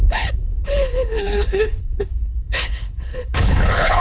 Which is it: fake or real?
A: fake